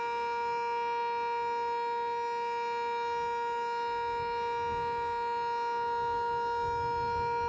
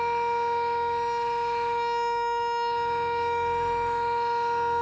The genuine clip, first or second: first